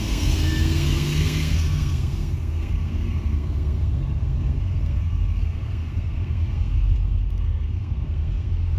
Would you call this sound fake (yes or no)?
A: yes